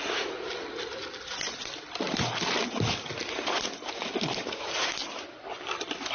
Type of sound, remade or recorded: recorded